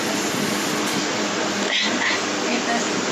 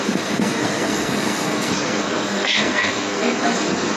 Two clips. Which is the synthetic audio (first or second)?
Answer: second